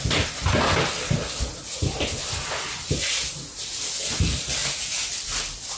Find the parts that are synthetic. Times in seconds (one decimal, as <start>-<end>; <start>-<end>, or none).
none